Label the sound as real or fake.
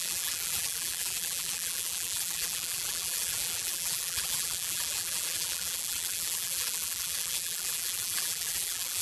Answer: fake